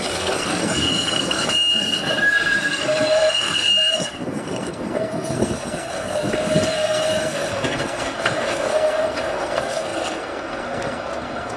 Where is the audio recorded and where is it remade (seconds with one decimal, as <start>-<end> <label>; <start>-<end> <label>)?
0.0-11.6 remade